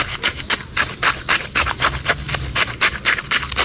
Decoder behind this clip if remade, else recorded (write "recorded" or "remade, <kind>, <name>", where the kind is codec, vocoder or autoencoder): recorded